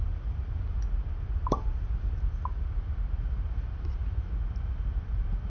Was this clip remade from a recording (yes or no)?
no